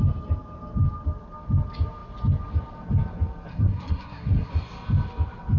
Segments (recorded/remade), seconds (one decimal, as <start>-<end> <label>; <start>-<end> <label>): 0.0-3.5 recorded; 3.5-4.5 remade; 4.5-5.6 recorded

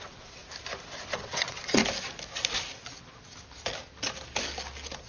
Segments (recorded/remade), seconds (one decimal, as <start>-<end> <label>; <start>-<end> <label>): 0.0-0.4 remade; 0.4-1.0 recorded; 1.0-1.8 remade; 1.8-5.1 recorded

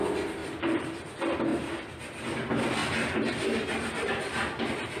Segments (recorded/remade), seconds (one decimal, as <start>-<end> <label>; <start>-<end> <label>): 0.0-0.4 recorded; 0.4-1.1 remade; 1.1-1.5 recorded; 1.5-2.2 remade; 2.2-2.8 recorded; 2.8-4.2 remade; 4.2-5.0 recorded

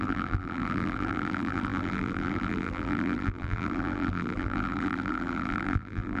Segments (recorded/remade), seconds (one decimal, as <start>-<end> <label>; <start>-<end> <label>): 0.0-6.2 remade

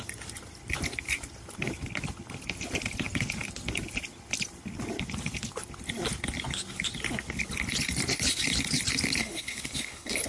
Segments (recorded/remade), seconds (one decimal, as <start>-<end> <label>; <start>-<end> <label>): 0.0-9.2 recorded; 9.2-10.3 remade

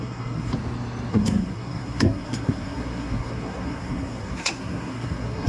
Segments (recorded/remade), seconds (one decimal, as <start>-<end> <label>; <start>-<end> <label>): 0.0-0.5 remade; 0.5-1.1 recorded; 1.1-5.5 remade